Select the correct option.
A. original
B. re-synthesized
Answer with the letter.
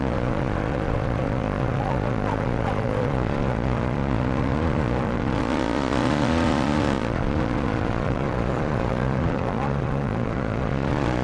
B